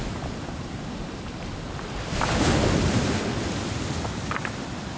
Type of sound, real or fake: real